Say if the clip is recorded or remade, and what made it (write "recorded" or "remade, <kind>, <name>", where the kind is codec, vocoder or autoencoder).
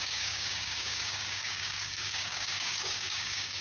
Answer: remade, codec, DAC